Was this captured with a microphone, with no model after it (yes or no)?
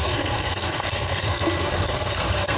no